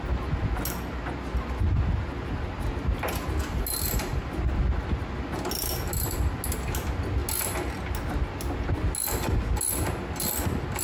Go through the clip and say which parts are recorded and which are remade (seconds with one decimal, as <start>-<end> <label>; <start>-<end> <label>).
0.0-10.8 recorded